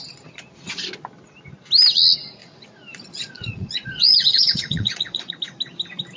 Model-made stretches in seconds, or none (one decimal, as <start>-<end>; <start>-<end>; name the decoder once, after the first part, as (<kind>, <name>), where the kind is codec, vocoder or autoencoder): 2.4-5.3 (vocoder, Vocos)